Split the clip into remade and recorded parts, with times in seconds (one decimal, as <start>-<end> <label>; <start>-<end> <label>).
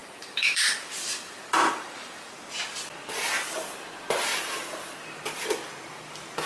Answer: 0.0-2.3 remade; 2.3-6.5 recorded